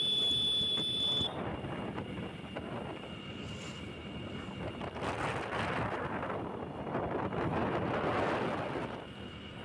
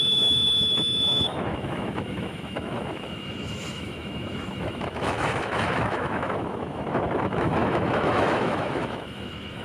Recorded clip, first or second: first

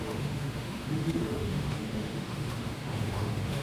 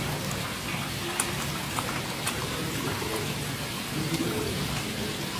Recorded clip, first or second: second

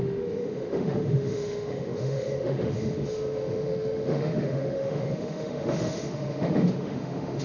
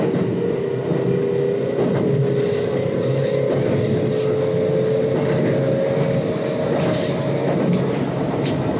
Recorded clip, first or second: second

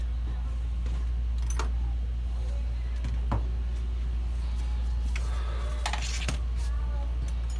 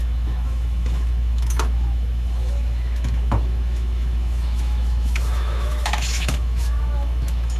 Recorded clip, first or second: first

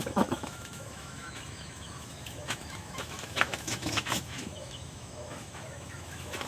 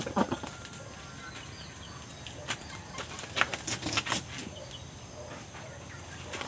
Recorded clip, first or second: second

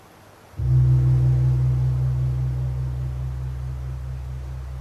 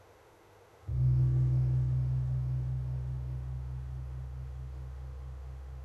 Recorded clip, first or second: first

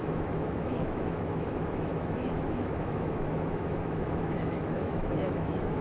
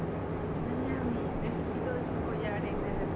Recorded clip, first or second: second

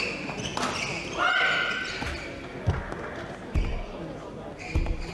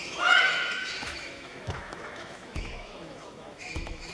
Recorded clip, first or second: first